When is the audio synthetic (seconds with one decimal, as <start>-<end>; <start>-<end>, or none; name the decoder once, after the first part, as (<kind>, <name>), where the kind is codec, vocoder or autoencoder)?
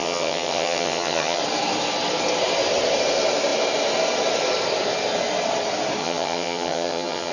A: 0.0-1.4 (vocoder, HiFi-GAN); 6.0-7.3